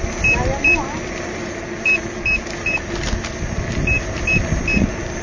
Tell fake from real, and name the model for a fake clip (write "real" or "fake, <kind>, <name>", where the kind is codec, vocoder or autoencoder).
real